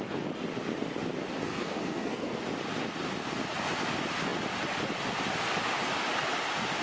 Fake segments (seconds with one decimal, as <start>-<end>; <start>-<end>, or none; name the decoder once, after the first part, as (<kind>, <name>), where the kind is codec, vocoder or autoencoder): 1.4-2.4 (codec, SNAC)

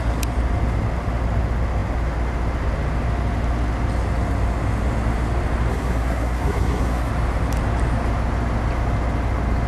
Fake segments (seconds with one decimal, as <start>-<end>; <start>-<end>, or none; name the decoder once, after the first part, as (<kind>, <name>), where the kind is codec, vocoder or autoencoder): 5.7-7.1 (codec, SNAC)

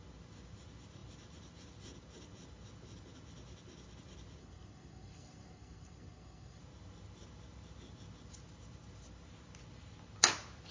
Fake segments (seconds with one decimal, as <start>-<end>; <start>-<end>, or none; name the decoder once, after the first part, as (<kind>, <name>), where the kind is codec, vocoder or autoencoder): 4.4-6.6 (codec, SNAC)

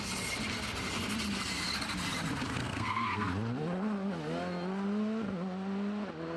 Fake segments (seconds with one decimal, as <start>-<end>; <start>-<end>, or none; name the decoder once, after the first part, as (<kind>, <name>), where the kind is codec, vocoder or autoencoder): 2.6-3.3 (codec, SNAC)

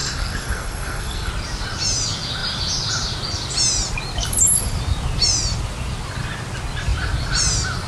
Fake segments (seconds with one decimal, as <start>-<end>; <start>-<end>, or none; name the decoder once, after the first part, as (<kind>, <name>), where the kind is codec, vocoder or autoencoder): 0.0-1.3 (codec, SNAC)

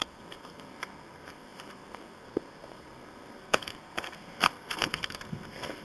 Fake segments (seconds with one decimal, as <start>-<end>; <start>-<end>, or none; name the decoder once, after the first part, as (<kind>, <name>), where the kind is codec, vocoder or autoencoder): 0.0-5.8 (codec, SNAC)

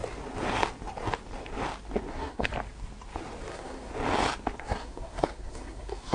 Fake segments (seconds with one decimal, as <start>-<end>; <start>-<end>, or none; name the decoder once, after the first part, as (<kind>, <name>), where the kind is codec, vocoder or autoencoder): 2.1-2.5 (codec, SNAC); 3.5-3.9; 4.6-6.1